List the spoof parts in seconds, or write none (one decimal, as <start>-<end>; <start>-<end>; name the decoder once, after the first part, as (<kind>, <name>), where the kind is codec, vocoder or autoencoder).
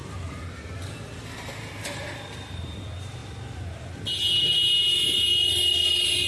none